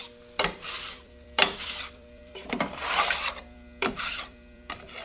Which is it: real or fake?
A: fake